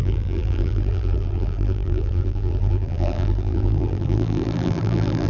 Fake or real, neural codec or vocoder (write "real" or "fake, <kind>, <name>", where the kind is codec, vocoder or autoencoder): fake, vocoder, BigVGAN v2